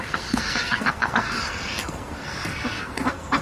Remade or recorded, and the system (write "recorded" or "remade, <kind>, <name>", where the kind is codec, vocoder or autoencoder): remade, codec, SNAC